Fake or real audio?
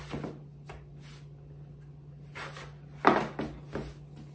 real